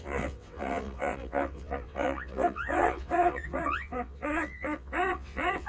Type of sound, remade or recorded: remade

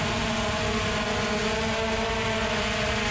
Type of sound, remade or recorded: recorded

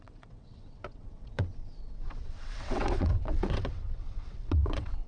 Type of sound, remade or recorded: remade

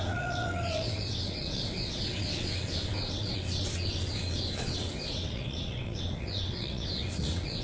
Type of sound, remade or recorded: remade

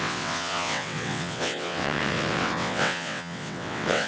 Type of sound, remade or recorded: remade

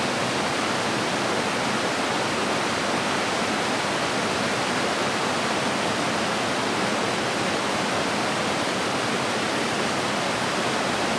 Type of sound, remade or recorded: recorded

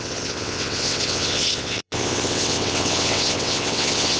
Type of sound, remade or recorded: remade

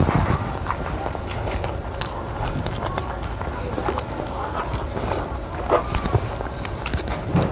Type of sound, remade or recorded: recorded